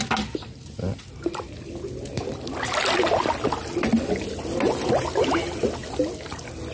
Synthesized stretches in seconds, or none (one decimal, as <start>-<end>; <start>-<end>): none